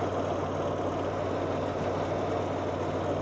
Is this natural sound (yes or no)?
yes